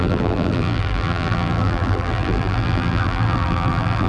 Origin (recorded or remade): remade